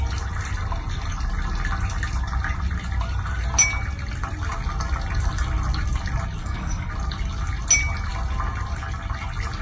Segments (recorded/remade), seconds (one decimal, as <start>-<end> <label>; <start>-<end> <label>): 0.0-6.4 recorded; 6.4-6.9 remade; 6.9-9.6 recorded